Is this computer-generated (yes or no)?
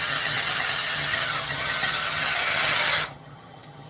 yes